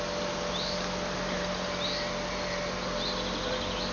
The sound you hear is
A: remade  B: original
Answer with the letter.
B